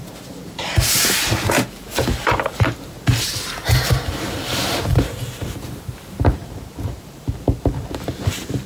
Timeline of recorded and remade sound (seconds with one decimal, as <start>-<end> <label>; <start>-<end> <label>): 0.0-8.7 remade